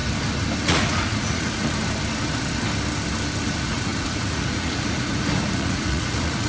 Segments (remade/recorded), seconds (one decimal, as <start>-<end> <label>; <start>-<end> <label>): 0.0-0.6 recorded; 0.6-1.8 remade; 1.8-3.4 recorded; 3.4-6.5 remade